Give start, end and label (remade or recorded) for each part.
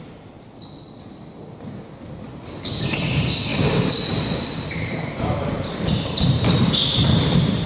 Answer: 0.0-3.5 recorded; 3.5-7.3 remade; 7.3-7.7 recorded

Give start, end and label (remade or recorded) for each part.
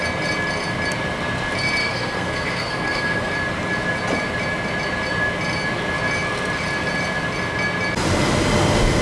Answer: 0.0-1.8 recorded; 1.8-3.3 remade; 3.3-9.0 recorded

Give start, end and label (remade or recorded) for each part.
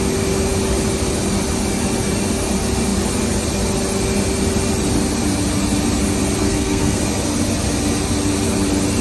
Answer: 0.0-6.4 recorded; 6.4-7.0 remade; 7.0-9.0 recorded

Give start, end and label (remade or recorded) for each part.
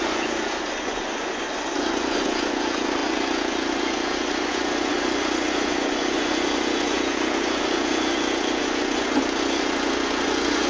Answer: 0.0-10.7 remade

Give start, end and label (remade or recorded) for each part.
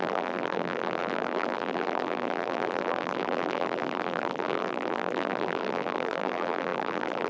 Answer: 0.0-7.3 remade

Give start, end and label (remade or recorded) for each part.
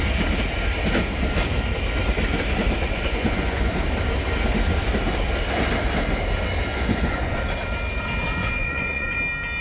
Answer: 0.0-2.9 recorded; 2.9-3.7 remade; 3.7-6.7 recorded; 6.7-7.4 remade; 7.4-8.4 recorded; 8.4-9.2 remade; 9.2-9.6 recorded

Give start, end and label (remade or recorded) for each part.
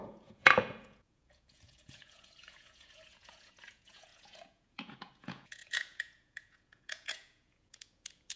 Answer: 0.0-8.4 remade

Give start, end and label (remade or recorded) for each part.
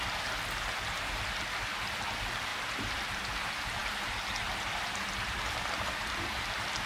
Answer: 0.0-3.8 recorded; 3.8-4.5 remade; 4.5-6.9 recorded